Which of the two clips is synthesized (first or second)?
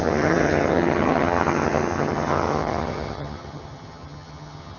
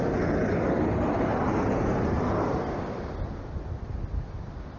first